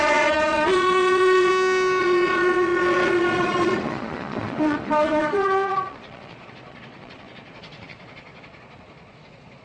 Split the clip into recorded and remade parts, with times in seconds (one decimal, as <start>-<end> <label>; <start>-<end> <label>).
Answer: 0.0-1.5 remade; 1.5-2.0 recorded; 2.0-9.6 remade

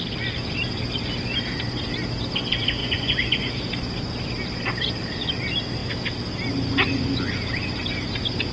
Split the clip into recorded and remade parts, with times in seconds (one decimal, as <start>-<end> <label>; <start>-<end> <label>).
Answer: 0.0-2.8 recorded; 2.8-3.5 remade; 3.5-8.5 recorded